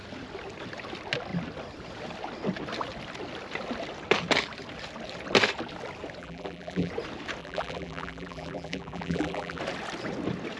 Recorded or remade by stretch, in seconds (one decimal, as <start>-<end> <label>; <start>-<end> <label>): 0.0-6.2 recorded; 6.2-6.9 remade; 6.9-7.4 recorded; 7.4-9.6 remade; 9.6-10.6 recorded